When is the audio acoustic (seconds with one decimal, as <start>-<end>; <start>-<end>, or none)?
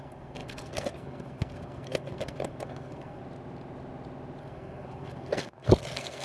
3.2-4.4